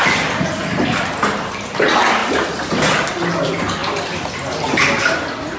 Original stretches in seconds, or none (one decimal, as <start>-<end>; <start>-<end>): 0.0-5.6